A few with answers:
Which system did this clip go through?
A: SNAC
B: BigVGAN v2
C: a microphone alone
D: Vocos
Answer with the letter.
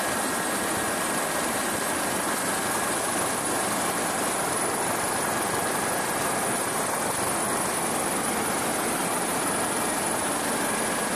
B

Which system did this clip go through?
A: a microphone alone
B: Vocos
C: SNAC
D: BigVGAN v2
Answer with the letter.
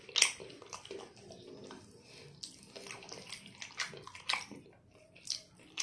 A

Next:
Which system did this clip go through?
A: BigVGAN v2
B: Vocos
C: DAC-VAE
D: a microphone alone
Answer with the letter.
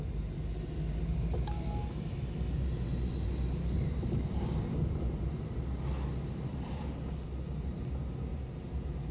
D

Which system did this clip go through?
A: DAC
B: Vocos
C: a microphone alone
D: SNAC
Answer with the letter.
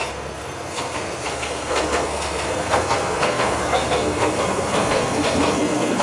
D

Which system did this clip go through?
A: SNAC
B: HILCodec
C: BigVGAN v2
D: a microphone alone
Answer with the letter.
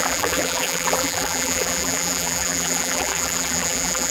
C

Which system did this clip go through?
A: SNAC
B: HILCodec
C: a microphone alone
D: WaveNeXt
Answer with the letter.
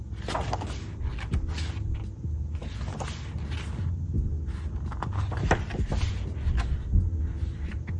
C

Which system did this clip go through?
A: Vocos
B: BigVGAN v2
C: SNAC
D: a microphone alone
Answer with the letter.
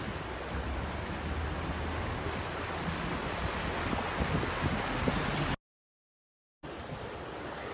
D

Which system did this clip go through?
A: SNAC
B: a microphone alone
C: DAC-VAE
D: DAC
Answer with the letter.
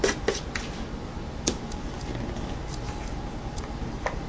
B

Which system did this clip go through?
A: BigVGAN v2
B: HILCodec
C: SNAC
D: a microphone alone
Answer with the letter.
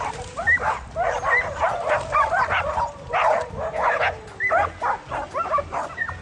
D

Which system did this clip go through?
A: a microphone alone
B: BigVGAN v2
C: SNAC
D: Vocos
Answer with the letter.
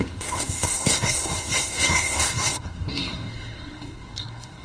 C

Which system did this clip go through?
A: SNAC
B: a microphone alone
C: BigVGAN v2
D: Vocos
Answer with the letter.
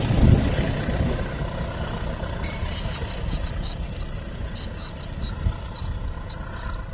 B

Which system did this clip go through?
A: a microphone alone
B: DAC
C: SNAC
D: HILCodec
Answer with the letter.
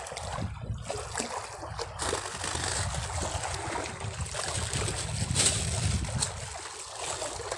A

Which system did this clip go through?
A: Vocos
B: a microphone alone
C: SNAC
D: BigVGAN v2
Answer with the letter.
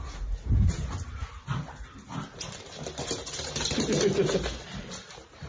B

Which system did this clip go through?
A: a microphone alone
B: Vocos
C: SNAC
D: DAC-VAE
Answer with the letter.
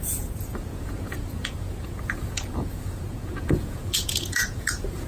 B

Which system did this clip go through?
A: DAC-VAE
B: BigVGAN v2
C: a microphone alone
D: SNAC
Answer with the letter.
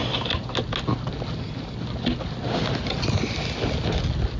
C